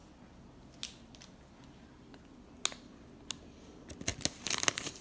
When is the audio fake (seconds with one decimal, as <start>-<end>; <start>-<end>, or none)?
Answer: none